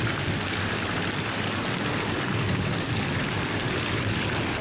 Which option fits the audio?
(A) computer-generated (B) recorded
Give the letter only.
B